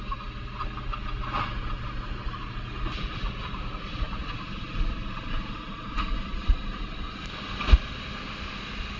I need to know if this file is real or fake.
real